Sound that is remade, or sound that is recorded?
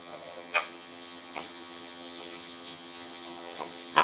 remade